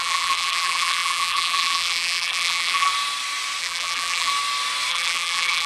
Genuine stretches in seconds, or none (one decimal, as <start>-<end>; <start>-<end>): 2.9-3.6; 4.3-4.9